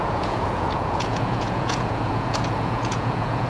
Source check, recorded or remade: remade